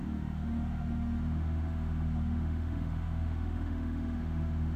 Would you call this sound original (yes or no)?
no